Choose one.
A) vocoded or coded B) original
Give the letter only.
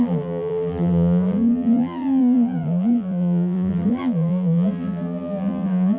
A